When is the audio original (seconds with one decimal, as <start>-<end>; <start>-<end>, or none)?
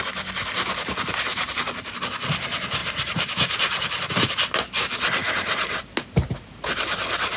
0.0-1.3; 2.0-2.8; 4.1-7.4